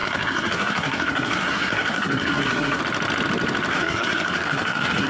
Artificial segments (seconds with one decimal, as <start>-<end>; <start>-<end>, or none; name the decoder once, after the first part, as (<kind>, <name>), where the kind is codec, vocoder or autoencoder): 0.0-2.8 (codec, SNAC); 3.7-5.1